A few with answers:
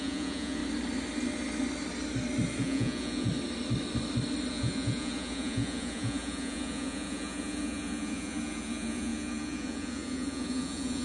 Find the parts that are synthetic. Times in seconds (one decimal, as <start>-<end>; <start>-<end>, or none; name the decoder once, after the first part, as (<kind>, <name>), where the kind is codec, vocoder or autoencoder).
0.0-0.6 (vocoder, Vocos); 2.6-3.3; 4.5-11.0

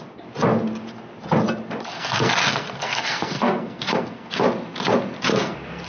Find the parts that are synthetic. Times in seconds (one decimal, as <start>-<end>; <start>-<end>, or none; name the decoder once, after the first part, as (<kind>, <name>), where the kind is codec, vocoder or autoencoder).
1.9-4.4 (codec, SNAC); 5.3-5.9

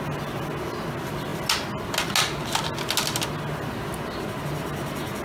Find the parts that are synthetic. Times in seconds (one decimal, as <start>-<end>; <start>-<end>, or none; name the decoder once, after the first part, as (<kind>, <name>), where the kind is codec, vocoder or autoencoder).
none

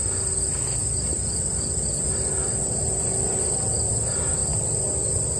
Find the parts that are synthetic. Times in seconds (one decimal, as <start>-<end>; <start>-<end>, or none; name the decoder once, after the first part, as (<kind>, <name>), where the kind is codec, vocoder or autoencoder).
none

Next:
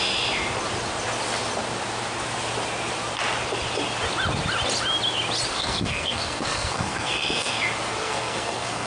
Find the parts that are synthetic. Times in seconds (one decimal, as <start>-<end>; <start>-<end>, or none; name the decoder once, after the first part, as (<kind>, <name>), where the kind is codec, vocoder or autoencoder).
5.5-7.6 (codec, SNAC); 8.0-8.9

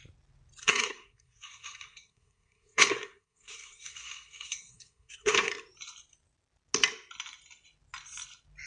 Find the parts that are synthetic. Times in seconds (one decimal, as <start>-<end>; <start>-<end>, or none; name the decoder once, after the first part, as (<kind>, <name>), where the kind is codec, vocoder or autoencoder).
0.6-5.5 (codec, SNAC)